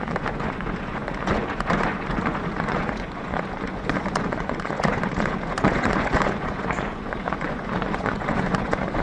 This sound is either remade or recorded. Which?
remade